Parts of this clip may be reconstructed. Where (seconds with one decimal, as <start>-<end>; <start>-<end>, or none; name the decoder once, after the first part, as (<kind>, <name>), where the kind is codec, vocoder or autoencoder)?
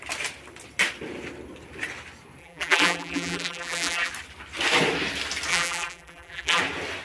2.4-4.1 (vocoder, BigVGAN v2); 5.5-6.6